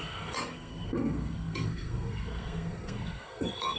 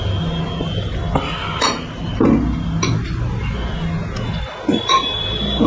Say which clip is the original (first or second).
second